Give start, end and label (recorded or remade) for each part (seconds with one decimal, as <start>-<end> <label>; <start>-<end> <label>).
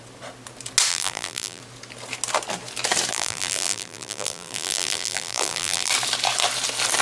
0.0-0.9 recorded; 0.9-1.6 remade; 1.6-3.1 recorded; 3.1-5.9 remade; 5.9-7.0 recorded